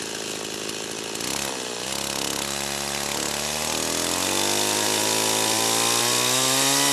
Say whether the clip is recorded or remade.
recorded